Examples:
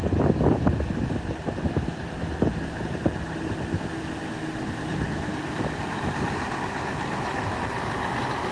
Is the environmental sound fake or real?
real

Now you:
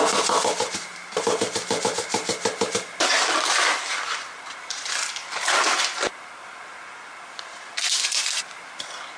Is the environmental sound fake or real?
real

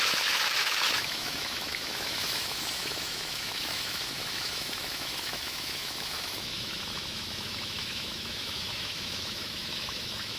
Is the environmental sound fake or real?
fake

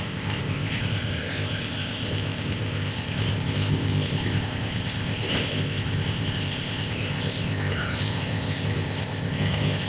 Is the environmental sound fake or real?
fake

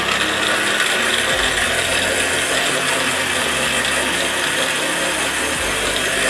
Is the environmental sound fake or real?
real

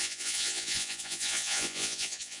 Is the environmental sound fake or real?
fake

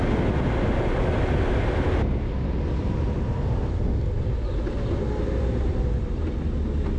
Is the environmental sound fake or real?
real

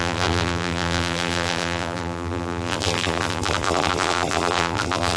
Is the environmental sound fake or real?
fake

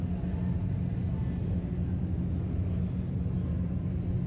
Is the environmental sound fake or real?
real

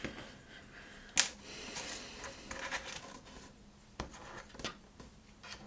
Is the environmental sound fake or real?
real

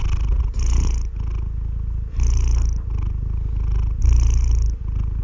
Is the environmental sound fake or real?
real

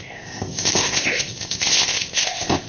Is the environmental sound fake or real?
fake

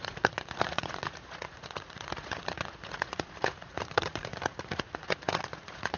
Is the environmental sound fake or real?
fake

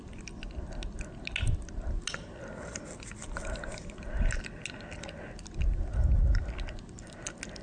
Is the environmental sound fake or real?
real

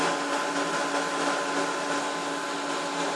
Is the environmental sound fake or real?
real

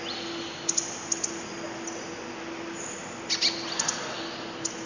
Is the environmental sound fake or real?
real